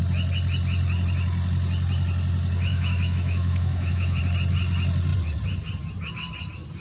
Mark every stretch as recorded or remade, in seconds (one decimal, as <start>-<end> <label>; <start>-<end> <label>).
0.0-2.7 recorded; 2.7-4.2 remade; 4.2-6.8 recorded